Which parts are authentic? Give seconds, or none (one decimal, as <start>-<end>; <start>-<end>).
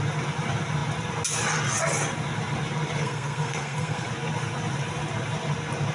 0.0-3.0; 4.1-5.9